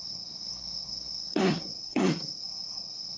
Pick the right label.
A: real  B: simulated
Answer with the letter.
B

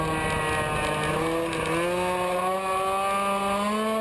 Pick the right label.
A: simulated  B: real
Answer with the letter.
B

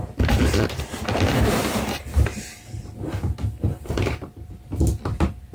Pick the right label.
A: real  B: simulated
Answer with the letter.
B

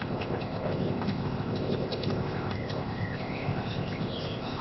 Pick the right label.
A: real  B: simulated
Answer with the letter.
B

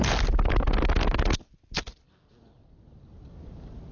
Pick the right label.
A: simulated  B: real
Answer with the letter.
B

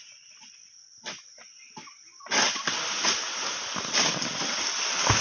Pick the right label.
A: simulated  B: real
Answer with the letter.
B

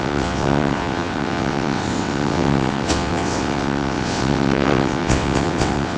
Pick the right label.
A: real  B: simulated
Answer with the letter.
B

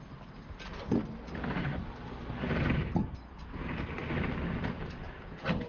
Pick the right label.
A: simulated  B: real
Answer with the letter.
B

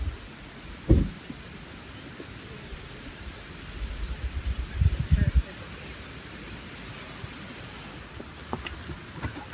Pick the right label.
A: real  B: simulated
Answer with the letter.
A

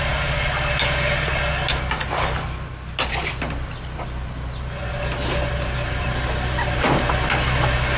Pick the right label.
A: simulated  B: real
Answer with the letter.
B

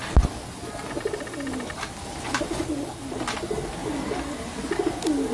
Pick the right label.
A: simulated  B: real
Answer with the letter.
B